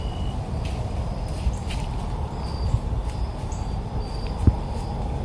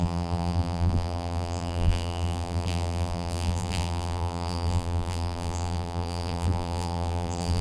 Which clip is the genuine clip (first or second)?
first